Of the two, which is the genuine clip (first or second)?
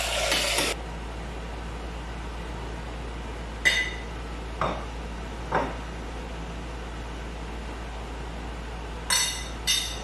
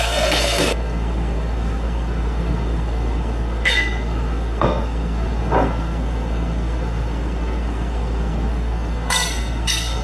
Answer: first